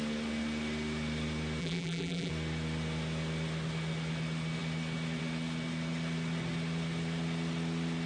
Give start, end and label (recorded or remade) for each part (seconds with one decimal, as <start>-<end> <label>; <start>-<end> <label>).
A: 0.0-1.6 recorded; 1.6-2.3 remade; 2.3-8.1 recorded